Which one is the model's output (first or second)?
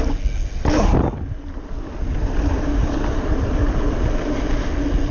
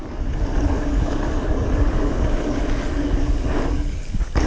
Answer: second